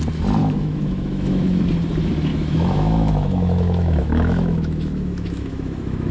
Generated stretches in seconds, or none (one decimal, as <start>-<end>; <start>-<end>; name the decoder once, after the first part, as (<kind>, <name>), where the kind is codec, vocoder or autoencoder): 0.4-1.6 (autoencoder, DAC-VAE); 2.3-6.1